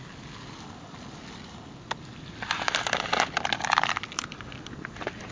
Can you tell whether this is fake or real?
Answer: real